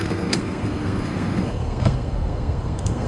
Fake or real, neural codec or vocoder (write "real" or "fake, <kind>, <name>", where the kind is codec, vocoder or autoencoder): fake, codec, SNAC